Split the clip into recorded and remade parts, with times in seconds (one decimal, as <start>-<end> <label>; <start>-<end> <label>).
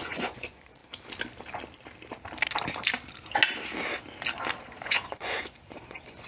0.0-0.8 remade; 0.8-4.6 recorded; 4.6-6.3 remade